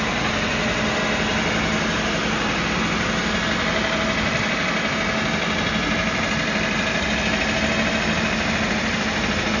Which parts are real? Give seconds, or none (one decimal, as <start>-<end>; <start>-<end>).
0.0-9.6